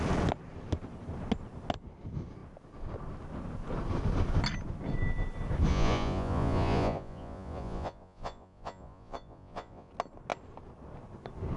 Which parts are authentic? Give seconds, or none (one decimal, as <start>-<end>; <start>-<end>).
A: 0.0-5.7; 9.9-11.6